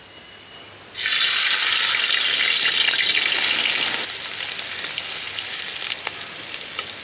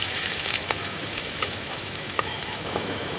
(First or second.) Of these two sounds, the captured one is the first